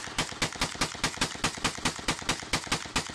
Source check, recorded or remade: recorded